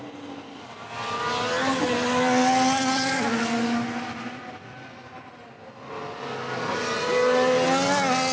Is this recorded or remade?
recorded